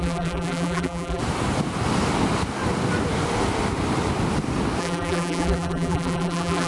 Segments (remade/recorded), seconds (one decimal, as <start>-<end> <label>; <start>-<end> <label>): 0.0-1.2 remade; 1.2-4.8 recorded; 4.8-6.7 remade